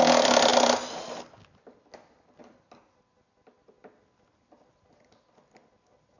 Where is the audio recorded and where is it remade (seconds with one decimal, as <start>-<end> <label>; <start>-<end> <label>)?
0.0-6.2 recorded